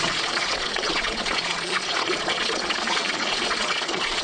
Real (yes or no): no